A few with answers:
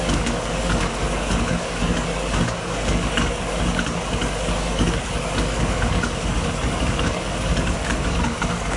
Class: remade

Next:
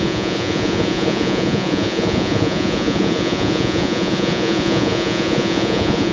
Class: remade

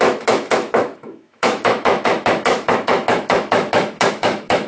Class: remade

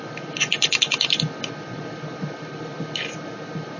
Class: recorded